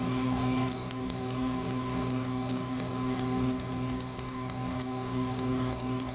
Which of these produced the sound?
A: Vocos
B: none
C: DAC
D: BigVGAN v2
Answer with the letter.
C